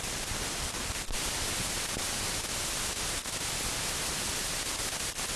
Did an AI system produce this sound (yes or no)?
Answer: no